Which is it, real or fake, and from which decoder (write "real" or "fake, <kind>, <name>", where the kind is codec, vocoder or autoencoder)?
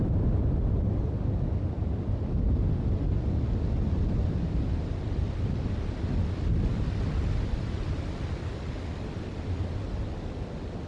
real